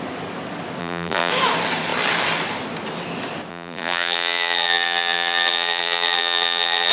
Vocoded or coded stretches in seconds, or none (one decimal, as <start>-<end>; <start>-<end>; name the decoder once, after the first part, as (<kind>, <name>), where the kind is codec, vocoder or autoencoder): 0.8-1.3 (vocoder, BigVGAN v2); 3.5-6.9

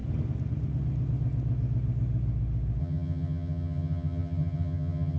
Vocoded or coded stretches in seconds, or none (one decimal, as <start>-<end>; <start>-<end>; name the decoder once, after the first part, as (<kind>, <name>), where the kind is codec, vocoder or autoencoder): 2.8-5.2 (vocoder, HiFi-GAN)

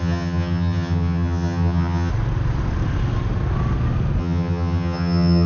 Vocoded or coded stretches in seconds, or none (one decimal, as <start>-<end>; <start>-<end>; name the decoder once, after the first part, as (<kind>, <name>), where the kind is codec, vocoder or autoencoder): 0.0-2.1 (vocoder, HiFi-GAN); 4.2-5.5

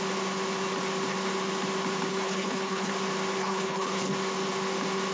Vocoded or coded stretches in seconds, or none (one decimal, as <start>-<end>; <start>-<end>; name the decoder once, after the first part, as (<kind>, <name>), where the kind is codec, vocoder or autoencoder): 2.1-2.9 (codec, HILCodec); 3.4-4.1

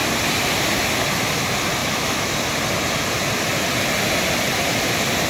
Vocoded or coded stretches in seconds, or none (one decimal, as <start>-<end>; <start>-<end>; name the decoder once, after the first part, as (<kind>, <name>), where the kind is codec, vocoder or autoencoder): 1.8-2.3 (autoencoder, DAC-VAE)

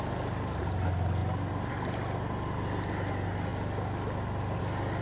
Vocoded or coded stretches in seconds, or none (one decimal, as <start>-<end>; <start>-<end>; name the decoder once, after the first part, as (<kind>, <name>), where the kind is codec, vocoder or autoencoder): none

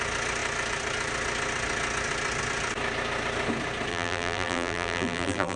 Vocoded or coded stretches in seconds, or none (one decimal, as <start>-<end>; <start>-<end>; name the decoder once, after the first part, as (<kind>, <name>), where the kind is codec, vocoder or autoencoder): 3.9-5.6 (vocoder, BigVGAN v2)

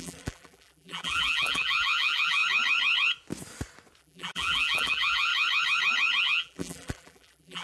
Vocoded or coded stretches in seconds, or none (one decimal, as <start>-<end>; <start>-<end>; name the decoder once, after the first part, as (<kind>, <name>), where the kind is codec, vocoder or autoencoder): 0.0-2.4 (vocoder, BigVGAN v2); 4.0-5.3; 6.2-7.6